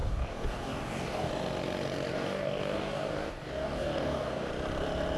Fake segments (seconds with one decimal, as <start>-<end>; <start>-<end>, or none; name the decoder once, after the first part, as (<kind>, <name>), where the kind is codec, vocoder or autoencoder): 0.0-1.3 (codec, DAC); 2.1-4.5